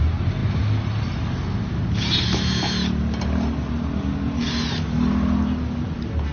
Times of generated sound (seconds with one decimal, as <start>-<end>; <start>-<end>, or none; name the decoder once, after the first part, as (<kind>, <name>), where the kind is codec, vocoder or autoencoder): none